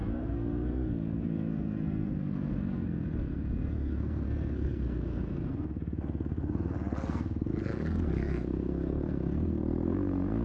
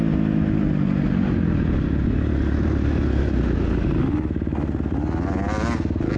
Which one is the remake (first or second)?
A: first